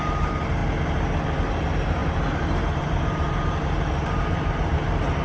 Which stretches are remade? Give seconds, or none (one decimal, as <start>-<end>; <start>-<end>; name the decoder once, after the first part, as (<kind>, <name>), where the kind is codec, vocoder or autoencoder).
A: 0.0-0.6 (vocoder, BigVGAN v2); 1.5-5.2